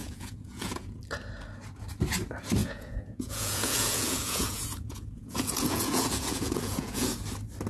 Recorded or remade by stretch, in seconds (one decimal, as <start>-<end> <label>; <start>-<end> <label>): 0.0-1.0 remade; 1.0-2.6 recorded; 2.6-7.2 remade; 7.2-7.7 recorded

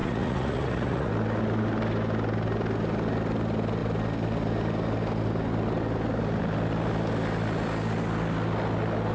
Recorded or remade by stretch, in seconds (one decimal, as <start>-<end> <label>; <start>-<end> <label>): 0.0-1.1 remade; 1.1-9.1 recorded

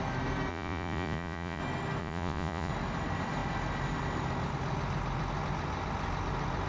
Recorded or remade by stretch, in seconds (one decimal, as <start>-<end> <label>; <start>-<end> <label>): 0.0-0.5 recorded; 0.5-1.6 remade; 1.6-2.0 recorded; 2.0-2.7 remade; 2.7-6.7 recorded

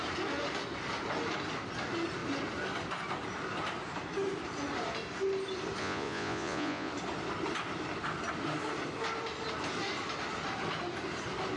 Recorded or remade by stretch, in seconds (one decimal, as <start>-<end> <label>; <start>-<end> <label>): 0.0-5.8 recorded; 5.8-6.9 remade; 6.9-11.6 recorded

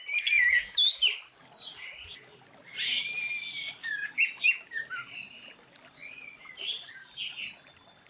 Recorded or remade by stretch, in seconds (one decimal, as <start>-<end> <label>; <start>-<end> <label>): 0.0-6.0 recorded; 6.0-6.9 remade; 6.9-8.1 recorded

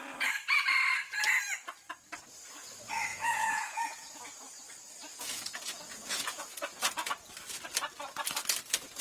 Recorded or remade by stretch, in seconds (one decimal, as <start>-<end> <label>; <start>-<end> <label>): 0.0-3.1 recorded; 3.1-4.6 remade; 4.6-5.1 recorded; 5.1-7.1 remade; 7.1-9.0 recorded

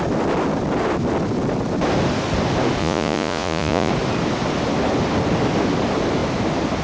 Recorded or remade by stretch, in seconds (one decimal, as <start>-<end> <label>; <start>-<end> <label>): 0.0-2.8 recorded; 2.8-3.9 remade; 3.9-6.8 recorded

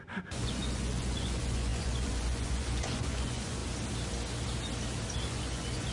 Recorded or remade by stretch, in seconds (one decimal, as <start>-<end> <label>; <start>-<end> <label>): 0.0-3.6 remade; 3.6-5.3 recorded; 5.3-5.9 remade